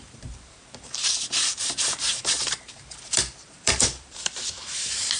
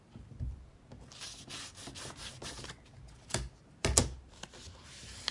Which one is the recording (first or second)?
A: second